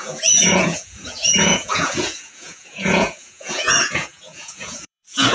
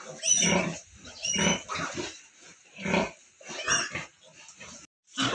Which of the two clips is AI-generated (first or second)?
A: first